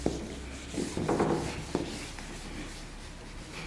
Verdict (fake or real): real